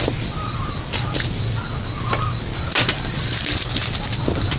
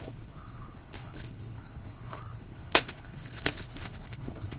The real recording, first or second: first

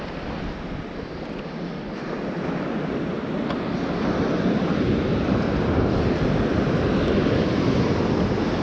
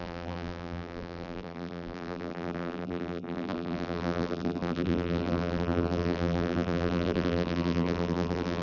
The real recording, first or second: first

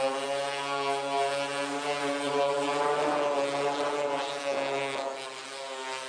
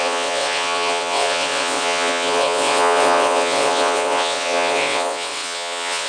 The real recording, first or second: first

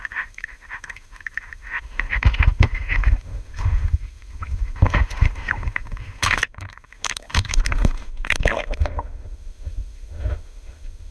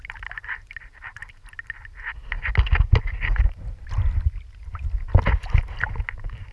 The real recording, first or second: second